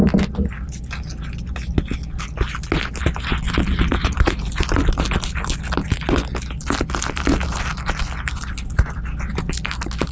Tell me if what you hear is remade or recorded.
recorded